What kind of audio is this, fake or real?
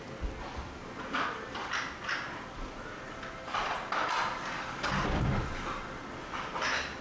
real